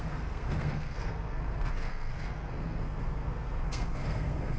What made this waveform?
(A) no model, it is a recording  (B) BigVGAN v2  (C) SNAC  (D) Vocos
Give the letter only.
C